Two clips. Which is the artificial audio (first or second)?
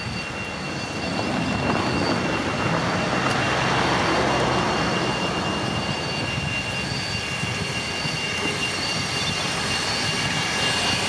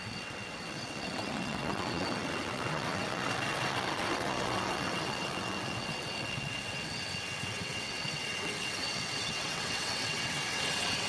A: second